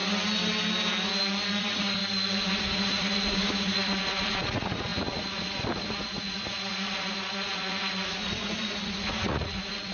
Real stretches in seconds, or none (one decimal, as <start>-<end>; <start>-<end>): 0.0-1.6; 2.0-2.6